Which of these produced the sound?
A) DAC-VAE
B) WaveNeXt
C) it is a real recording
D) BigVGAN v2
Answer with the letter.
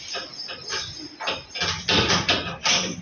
C